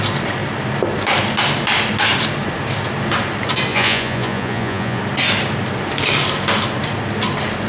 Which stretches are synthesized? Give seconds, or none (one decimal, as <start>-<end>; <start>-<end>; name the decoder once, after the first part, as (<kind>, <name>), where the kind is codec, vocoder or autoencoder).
3.7-5.0 (vocoder, Vocos)